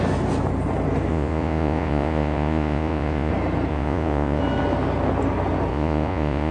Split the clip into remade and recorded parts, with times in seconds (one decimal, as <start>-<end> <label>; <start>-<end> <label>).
0.0-1.1 recorded; 1.1-3.3 remade; 3.3-3.7 recorded; 3.7-4.4 remade; 4.4-5.7 recorded; 5.7-6.5 remade